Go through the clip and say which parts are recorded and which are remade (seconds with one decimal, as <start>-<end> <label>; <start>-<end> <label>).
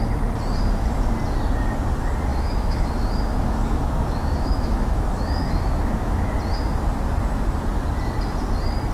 0.0-2.3 recorded; 2.3-6.3 remade; 6.3-8.9 recorded